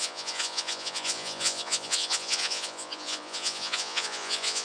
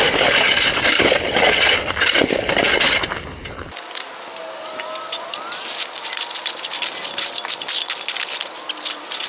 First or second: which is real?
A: second